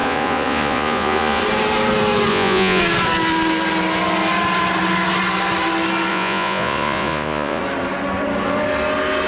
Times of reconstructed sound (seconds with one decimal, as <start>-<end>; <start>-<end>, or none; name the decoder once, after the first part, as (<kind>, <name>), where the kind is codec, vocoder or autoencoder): 0.0-1.4 (vocoder, Vocos); 2.3-2.8; 6.1-7.6